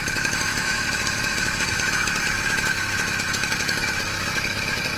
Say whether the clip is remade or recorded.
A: remade